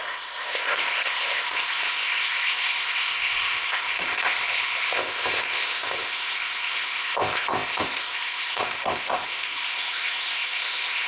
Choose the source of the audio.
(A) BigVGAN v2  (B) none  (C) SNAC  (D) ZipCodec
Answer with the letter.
D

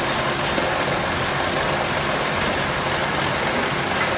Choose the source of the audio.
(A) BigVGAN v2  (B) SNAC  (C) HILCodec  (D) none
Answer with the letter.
D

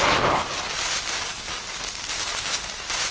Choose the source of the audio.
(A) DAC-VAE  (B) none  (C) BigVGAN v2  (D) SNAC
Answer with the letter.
B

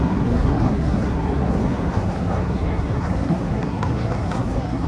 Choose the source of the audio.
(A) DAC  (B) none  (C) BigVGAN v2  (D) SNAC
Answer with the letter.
D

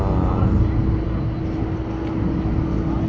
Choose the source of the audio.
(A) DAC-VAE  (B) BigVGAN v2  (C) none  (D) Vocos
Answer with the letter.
C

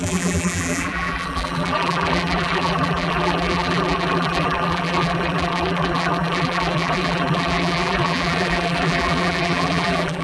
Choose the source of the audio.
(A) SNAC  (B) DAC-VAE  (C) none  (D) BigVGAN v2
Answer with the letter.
D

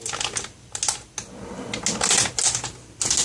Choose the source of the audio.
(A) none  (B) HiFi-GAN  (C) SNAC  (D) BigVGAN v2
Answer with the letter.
A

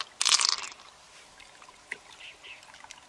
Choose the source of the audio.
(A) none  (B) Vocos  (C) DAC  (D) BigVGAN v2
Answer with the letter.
A